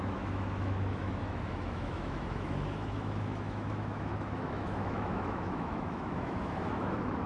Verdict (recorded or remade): remade